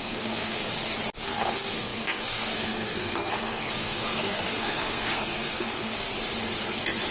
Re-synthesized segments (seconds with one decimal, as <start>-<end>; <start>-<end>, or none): 0.0-0.6; 1.2-6.1